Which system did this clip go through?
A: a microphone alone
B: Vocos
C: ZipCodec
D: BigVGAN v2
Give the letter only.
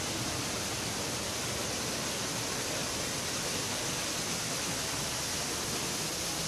A